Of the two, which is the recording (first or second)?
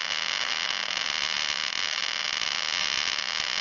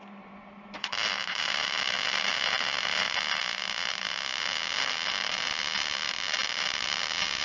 first